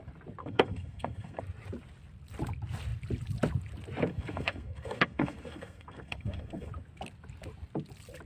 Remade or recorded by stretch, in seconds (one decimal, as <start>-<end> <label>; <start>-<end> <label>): 0.0-0.4 recorded; 0.4-1.4 remade; 1.4-4.1 recorded; 4.1-6.7 remade; 6.7-8.3 recorded